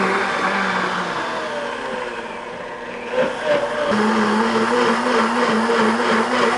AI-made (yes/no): no